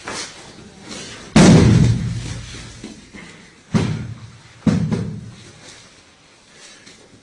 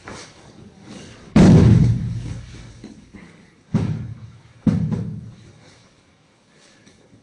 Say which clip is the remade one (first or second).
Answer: second